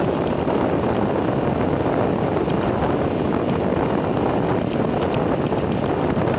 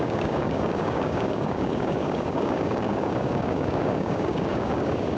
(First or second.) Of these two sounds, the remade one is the second